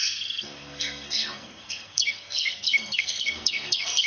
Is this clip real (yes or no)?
no